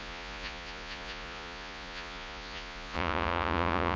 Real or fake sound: fake